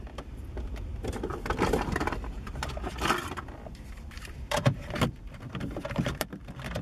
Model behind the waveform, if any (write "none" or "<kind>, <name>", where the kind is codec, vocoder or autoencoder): vocoder, BigVGAN v2